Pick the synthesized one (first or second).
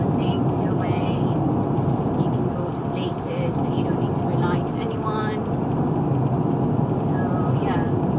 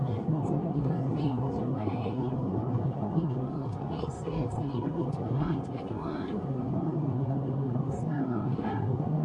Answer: second